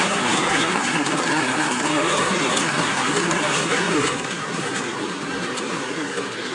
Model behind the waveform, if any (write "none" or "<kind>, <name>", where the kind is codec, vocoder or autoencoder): codec, SNAC